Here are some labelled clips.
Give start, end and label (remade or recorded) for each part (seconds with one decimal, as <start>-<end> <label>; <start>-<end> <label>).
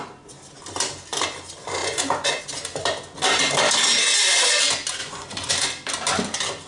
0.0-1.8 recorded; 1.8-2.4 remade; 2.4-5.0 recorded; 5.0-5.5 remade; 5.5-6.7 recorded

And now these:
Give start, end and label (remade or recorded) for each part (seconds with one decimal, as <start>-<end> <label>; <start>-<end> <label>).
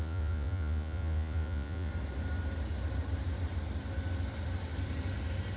0.0-1.9 remade; 1.9-5.6 recorded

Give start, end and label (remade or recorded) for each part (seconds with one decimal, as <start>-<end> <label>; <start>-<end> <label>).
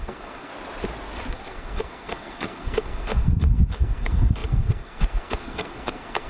0.0-0.5 remade; 0.5-1.3 recorded; 1.3-6.3 remade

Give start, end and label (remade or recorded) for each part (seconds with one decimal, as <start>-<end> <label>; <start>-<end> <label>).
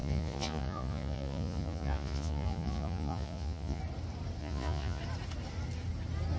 0.0-3.8 remade; 3.8-4.4 recorded; 4.4-5.0 remade; 5.0-6.4 recorded